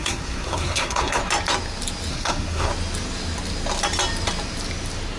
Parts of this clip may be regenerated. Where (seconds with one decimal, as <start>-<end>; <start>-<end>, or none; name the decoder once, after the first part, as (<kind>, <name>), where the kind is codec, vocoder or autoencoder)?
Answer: 0.0-1.2 (codec, SNAC); 2.1-2.7